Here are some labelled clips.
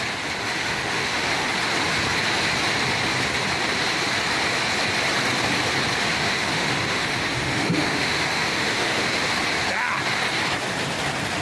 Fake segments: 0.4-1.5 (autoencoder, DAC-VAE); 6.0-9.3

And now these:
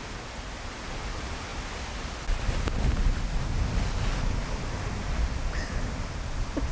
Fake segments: none

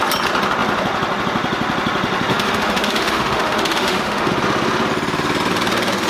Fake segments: 2.3-4.3 (autoencoder, DAC-VAE)

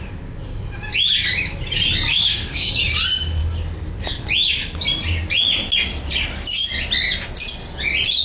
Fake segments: 2.1-2.7 (autoencoder, DAC-VAE)

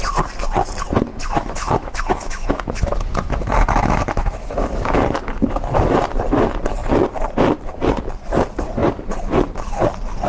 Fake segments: 1.1-5.8 (autoencoder, DAC-VAE)